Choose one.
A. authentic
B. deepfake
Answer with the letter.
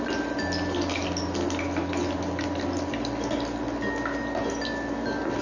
A